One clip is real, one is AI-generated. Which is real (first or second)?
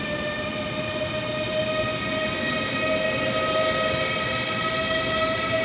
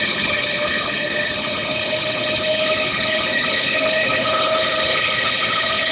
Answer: first